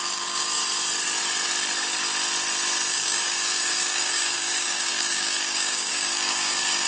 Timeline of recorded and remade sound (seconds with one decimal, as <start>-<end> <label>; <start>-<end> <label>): 0.0-0.6 remade; 0.6-2.9 recorded; 2.9-6.9 remade